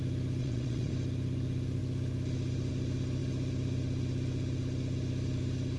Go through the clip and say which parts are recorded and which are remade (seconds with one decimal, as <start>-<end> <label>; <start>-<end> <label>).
0.0-0.4 recorded; 0.4-0.9 remade; 0.9-5.8 recorded